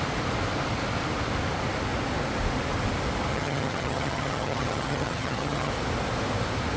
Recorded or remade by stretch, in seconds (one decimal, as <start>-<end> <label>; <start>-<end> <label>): 0.0-3.3 recorded; 3.3-5.7 remade; 5.7-6.8 recorded

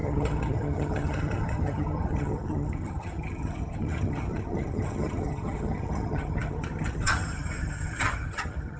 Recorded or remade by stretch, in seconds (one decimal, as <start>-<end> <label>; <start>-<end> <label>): 0.0-8.8 remade

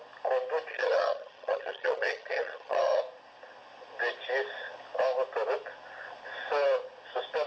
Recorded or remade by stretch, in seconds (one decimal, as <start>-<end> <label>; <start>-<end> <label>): 0.0-0.7 recorded; 0.7-3.0 remade; 3.0-7.5 recorded

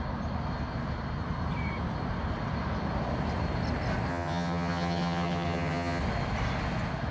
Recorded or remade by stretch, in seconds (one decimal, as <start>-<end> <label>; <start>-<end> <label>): 0.0-4.1 recorded; 4.1-6.0 remade; 6.0-7.1 recorded

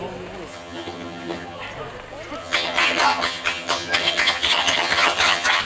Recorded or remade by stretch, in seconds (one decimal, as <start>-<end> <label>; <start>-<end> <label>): 0.0-0.5 recorded; 0.5-1.6 remade; 1.6-2.4 recorded; 2.4-5.6 remade

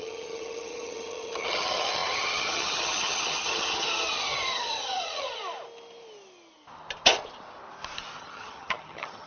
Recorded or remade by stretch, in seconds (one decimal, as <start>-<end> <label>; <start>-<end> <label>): 0.0-5.4 remade; 5.4-8.2 recorded; 8.2-9.3 remade

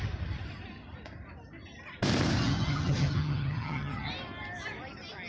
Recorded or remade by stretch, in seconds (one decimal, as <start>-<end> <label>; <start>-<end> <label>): 0.0-2.4 recorded; 2.4-4.1 remade; 4.1-5.3 recorded